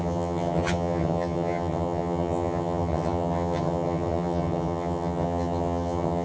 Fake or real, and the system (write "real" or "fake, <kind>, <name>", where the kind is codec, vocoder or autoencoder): fake, vocoder, HiFi-GAN